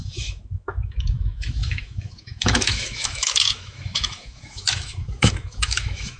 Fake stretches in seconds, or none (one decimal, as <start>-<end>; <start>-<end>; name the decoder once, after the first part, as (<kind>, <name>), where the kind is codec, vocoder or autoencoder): 0.0-6.2 (autoencoder, DAC-VAE)